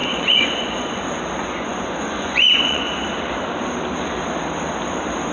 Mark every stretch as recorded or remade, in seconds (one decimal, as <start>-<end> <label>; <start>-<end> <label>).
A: 0.0-1.0 remade; 1.0-1.4 recorded; 1.4-2.9 remade; 2.9-5.3 recorded